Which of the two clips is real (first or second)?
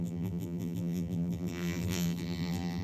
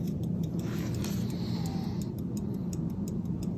second